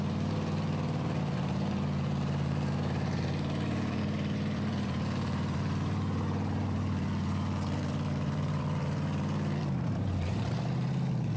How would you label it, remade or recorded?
remade